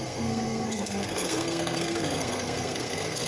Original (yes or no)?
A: no